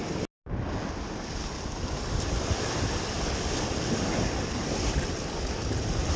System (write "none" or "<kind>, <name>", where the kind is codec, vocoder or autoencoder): none